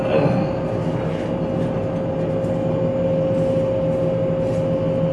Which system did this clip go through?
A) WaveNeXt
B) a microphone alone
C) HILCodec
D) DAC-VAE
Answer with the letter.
B